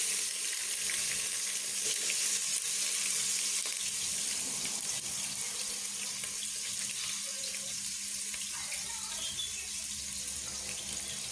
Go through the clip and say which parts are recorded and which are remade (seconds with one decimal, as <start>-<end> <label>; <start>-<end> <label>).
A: 0.0-7.3 recorded; 7.3-10.0 remade; 10.0-11.3 recorded